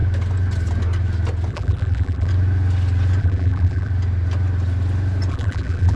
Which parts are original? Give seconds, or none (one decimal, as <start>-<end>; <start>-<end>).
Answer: 0.0-1.5; 2.3-3.2; 3.9-5.3